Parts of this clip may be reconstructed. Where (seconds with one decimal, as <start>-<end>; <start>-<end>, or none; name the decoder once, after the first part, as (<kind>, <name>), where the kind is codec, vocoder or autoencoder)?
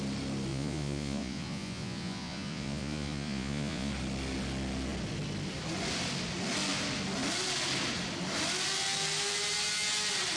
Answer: 0.5-3.9 (vocoder, Vocos)